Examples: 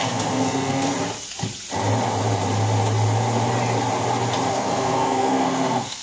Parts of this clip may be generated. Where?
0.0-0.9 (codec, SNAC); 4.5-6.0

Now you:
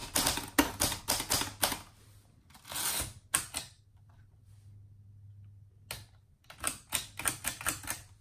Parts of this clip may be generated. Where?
none

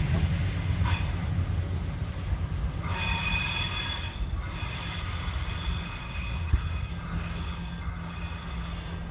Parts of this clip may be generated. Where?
6.0-6.9 (codec, SNAC)

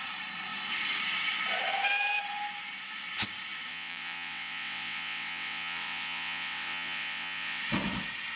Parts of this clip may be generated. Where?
3.7-7.6 (vocoder, WaveNeXt)

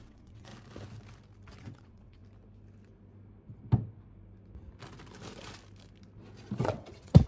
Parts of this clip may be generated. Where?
0.0-0.5 (vocoder, WaveNeXt); 1.6-2.2; 6.6-7.3

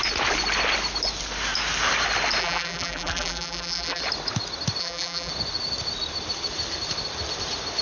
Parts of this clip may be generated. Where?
2.4-4.0 (vocoder, BigVGAN v2); 4.8-5.3

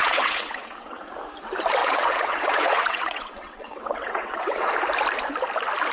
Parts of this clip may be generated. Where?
0.0-1.0 (vocoder, WaveNeXt); 1.8-4.7

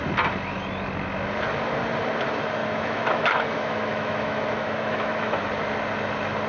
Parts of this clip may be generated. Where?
2.6-5.5 (autoencoder, DAC-VAE)